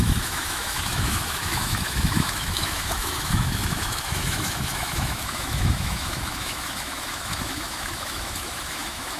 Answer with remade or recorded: remade